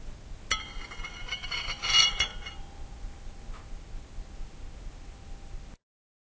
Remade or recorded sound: recorded